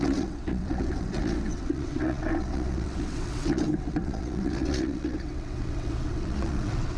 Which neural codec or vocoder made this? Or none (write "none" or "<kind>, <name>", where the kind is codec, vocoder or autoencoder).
vocoder, WaveNeXt